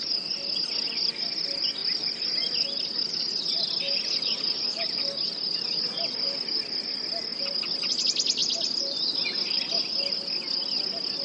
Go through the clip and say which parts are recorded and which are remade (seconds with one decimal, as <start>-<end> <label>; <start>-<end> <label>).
0.0-11.2 recorded